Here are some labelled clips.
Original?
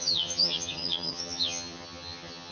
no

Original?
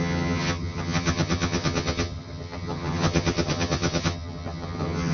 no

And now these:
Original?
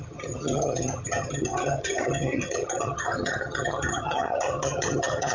no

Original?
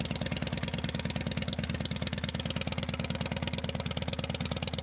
yes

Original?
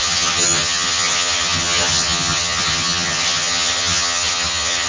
no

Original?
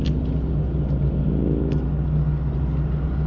yes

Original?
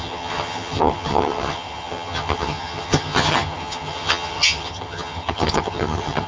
no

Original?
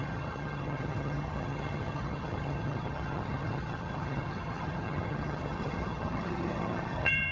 no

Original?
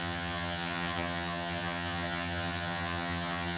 no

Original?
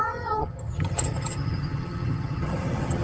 no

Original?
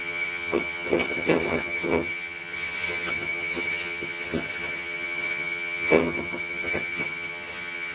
no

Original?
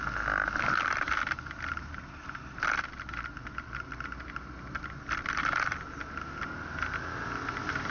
yes